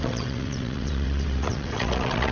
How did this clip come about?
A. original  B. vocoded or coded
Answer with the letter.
B